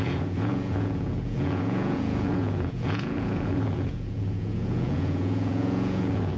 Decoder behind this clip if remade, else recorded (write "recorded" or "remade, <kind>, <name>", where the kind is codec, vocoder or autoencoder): remade, vocoder, Vocos